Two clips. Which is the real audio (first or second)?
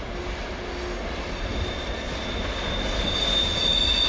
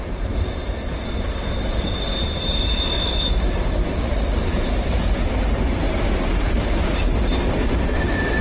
first